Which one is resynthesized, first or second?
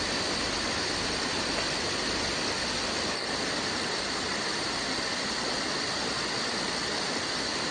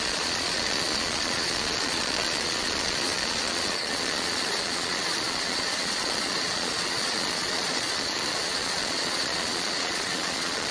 second